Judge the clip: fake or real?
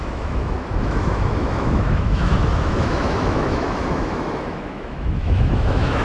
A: fake